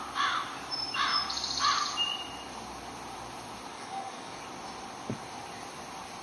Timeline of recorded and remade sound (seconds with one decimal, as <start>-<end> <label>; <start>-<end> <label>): 0.0-3.7 recorded; 3.7-4.4 remade; 4.4-6.2 recorded